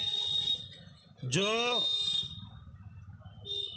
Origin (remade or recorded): recorded